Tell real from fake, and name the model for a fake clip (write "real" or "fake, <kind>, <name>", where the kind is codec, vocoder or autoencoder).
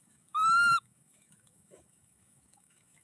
fake, autoencoder, DAC-VAE